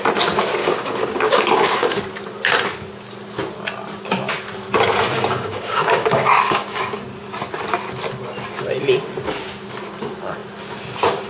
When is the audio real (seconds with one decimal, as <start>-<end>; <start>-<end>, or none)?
0.0-0.6; 2.0-5.1; 7.0-11.3